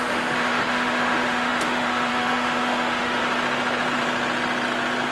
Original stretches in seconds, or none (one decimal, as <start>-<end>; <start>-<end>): 3.2-5.1